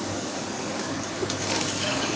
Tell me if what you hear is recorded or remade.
remade